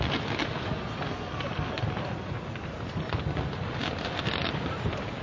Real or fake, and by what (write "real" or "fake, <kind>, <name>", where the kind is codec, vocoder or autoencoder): real